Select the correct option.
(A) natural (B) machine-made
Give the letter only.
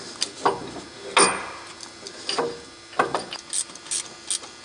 A